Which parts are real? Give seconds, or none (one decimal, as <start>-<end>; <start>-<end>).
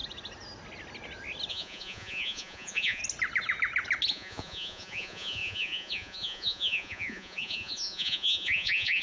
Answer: 0.0-1.5; 3.0-4.1